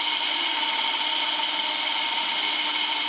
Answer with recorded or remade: recorded